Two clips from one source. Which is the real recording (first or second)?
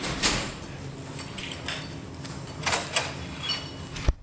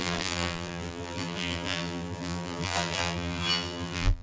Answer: first